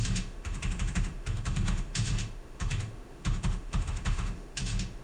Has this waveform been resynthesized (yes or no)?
yes